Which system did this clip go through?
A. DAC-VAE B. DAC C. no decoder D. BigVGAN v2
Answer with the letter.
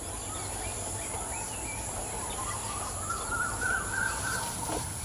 C